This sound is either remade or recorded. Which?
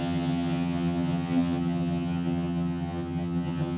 remade